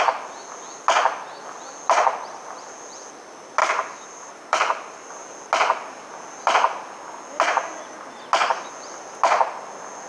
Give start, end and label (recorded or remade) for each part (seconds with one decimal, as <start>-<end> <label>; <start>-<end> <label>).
0.0-3.6 recorded; 3.6-5.1 remade; 5.1-10.1 recorded

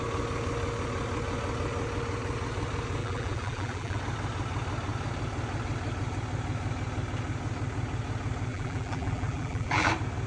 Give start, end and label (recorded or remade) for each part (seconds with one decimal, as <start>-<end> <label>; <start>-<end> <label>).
0.0-3.0 recorded; 3.0-4.0 remade; 4.0-8.5 recorded; 8.5-9.9 remade; 9.9-10.3 recorded

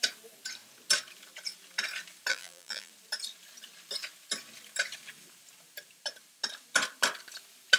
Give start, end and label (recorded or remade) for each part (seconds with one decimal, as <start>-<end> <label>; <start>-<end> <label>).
0.0-2.3 recorded; 2.3-2.9 remade; 2.9-7.8 recorded

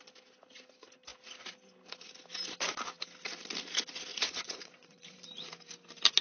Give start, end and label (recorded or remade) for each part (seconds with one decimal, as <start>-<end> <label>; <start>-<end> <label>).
0.0-4.1 recorded; 4.1-5.5 remade; 5.5-6.2 recorded